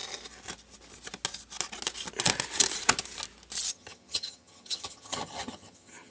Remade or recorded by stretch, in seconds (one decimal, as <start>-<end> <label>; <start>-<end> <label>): 0.0-3.7 recorded; 3.7-6.1 remade